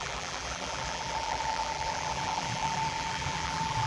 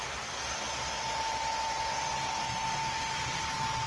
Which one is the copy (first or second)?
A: first